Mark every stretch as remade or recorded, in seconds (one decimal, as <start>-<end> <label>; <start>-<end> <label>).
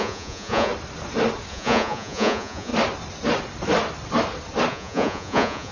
0.0-0.7 remade; 0.7-1.5 recorded; 1.5-2.7 remade; 2.7-4.7 recorded; 4.7-5.7 remade